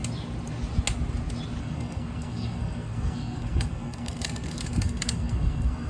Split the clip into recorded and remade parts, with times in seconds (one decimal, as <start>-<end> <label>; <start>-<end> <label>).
0.0-1.6 recorded; 1.6-5.9 remade